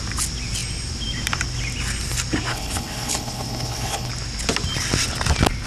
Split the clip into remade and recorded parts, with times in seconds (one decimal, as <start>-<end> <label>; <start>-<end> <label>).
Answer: 0.0-2.5 recorded; 2.5-4.1 remade; 4.1-5.7 recorded